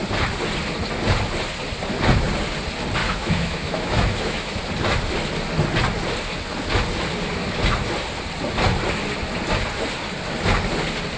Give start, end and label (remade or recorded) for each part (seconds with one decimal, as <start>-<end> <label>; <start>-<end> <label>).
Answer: 0.0-3.0 recorded; 3.0-4.6 remade; 4.6-11.2 recorded